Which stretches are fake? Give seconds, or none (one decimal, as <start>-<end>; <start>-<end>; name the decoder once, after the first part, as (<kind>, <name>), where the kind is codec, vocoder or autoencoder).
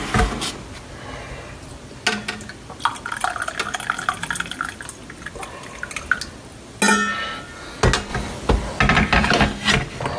8.1-8.8 (vocoder, BigVGAN v2)